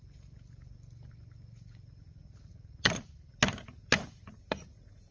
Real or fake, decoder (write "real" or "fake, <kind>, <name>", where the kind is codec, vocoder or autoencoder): real